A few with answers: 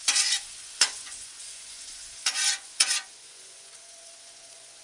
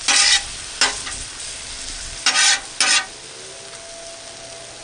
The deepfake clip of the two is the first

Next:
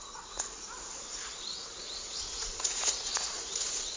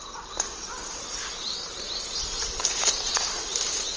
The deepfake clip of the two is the first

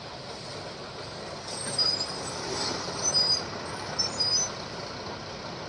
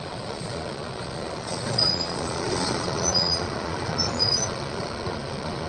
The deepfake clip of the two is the second